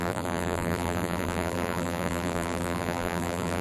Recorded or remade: remade